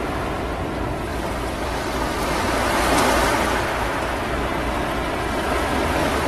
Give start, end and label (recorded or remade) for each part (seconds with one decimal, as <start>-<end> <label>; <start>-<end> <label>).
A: 0.0-1.1 recorded; 1.1-2.2 remade; 2.2-4.5 recorded; 4.5-5.1 remade; 5.1-6.3 recorded